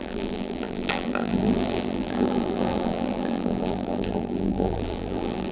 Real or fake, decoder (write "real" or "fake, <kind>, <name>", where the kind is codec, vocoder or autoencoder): fake, vocoder, BigVGAN v2